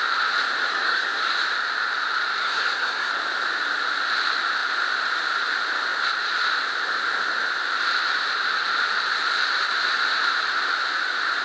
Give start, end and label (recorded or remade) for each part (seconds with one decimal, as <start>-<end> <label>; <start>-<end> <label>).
0.0-0.7 recorded; 0.7-1.2 remade; 1.2-2.4 recorded; 2.4-3.1 remade; 3.1-11.4 recorded